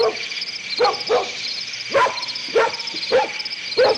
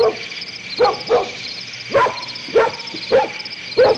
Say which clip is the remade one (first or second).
second